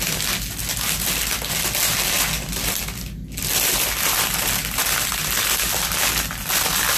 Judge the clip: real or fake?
real